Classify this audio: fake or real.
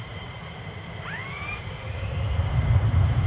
fake